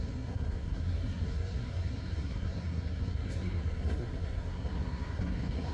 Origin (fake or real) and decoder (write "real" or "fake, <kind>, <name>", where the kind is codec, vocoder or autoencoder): fake, codec, SNAC